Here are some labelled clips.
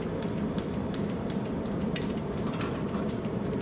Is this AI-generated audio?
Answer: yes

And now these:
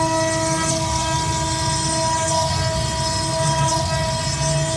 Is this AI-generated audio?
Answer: no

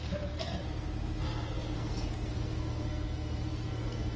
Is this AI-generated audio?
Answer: yes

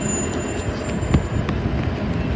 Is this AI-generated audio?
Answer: no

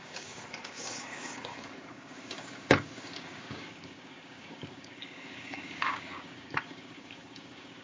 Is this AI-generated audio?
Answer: yes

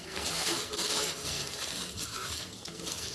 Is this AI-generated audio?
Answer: yes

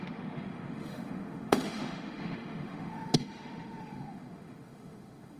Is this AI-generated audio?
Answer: yes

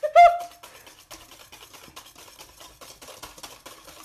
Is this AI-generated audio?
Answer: no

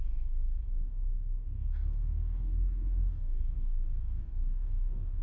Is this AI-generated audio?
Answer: yes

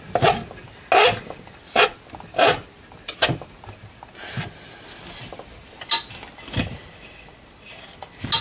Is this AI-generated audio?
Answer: no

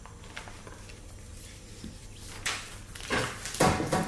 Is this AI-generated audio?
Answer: no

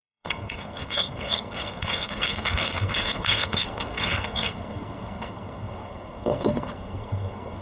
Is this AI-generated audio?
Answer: yes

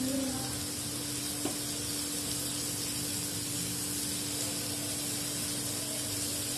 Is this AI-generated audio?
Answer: no